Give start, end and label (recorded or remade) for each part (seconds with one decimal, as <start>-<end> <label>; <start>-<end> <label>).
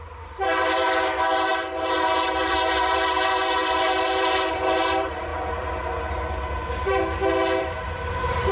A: 0.0-5.3 remade; 5.3-7.6 recorded; 7.6-8.5 remade